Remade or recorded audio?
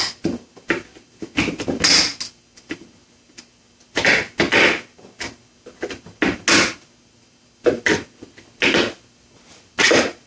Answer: recorded